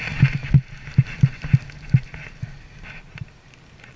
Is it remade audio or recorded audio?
recorded